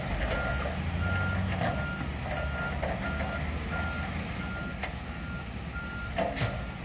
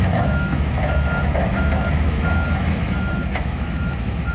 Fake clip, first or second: second